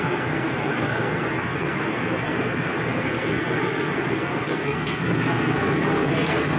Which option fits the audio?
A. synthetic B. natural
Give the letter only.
A